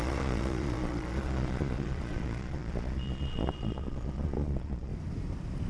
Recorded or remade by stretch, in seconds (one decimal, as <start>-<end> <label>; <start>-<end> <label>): 0.0-4.9 remade; 4.9-5.7 recorded